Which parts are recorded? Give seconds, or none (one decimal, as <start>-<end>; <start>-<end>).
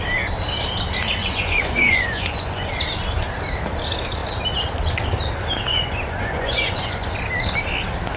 0.0-1.2; 2.7-5.7; 7.1-8.2